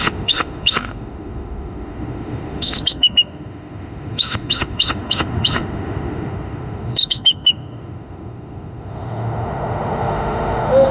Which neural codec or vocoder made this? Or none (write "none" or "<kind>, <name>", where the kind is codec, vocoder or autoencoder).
autoencoder, DAC-VAE